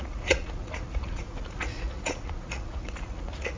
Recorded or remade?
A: remade